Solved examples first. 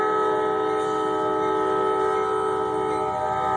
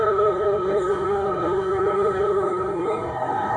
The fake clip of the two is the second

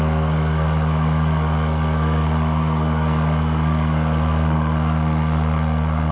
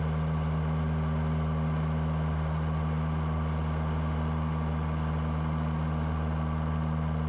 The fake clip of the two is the first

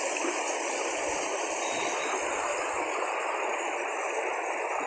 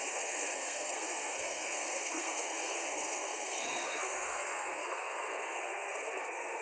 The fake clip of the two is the second